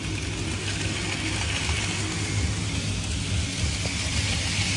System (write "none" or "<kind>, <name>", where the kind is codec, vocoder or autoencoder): none